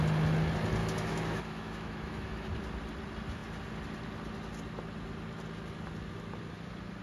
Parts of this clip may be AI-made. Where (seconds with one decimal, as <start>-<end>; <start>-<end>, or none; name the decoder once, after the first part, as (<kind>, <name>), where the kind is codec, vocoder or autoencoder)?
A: 0.8-2.5 (autoencoder, DAC-VAE)